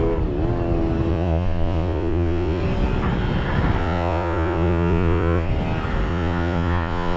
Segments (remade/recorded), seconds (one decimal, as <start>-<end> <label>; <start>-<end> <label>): 0.0-1.1 recorded; 1.1-2.6 remade; 2.6-3.8 recorded; 3.8-5.5 remade; 5.5-6.1 recorded; 6.1-7.2 remade